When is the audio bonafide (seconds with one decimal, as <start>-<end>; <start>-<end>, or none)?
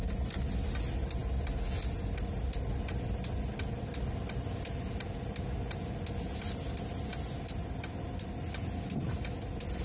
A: 0.0-9.8